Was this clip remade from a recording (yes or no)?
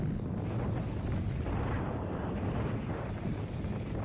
no